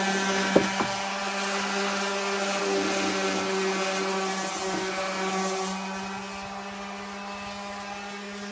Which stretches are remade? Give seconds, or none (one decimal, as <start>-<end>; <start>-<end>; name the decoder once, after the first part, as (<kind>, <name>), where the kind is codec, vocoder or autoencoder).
none